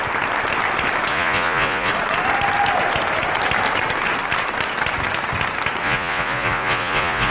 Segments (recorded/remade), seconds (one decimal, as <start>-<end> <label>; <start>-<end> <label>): 0.0-1.1 recorded; 1.1-1.9 remade; 1.9-5.8 recorded; 5.8-7.3 remade